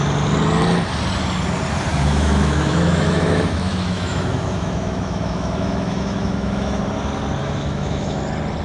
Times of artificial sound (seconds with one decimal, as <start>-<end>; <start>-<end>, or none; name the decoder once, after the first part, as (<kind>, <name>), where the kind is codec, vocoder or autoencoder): 1.9-6.8 (autoencoder, DAC-VAE); 7.4-8.2